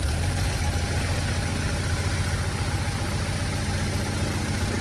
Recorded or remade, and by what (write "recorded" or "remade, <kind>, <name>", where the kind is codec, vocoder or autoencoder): recorded